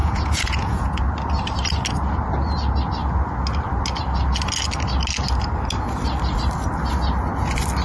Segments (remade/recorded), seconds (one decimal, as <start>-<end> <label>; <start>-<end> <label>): 0.0-1.0 remade; 1.0-7.8 recorded